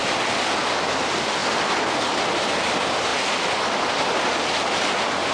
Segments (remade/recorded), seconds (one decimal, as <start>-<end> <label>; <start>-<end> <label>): 0.0-5.3 recorded